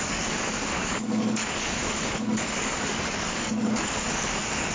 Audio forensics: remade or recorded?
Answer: remade